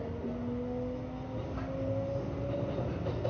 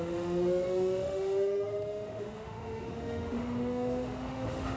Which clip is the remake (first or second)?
second